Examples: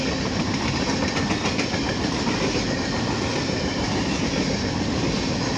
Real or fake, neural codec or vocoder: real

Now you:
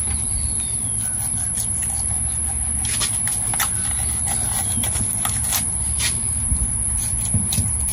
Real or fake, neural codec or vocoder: real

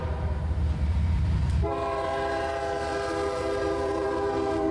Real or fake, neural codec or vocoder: fake, vocoder, BigVGAN v2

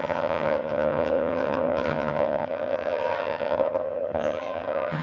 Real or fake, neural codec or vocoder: fake, vocoder, HiFi-GAN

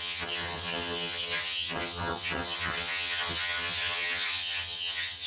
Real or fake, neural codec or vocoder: fake, vocoder, HiFi-GAN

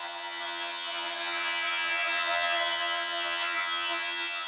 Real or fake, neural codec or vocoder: fake, vocoder, HiFi-GAN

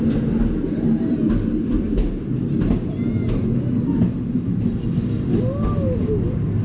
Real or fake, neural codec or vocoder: real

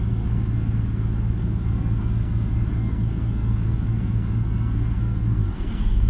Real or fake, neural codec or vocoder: fake, codec, SNAC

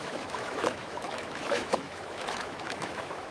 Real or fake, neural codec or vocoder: fake, autoencoder, DAC-VAE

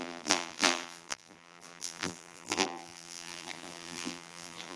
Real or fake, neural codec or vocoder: fake, vocoder, BigVGAN v2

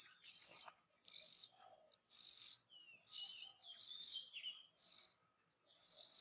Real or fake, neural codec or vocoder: real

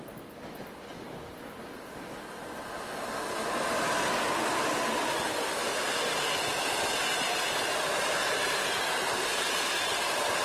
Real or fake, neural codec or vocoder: real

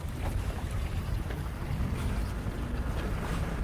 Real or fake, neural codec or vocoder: real